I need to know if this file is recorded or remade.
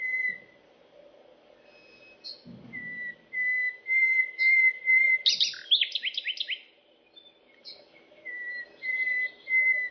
recorded